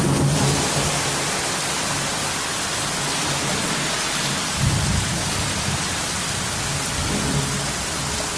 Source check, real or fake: real